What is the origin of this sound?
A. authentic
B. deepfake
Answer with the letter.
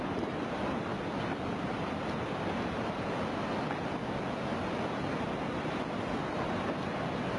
A